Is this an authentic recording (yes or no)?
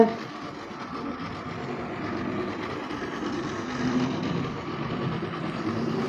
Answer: yes